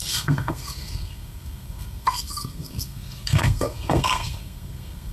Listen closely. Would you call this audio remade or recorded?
remade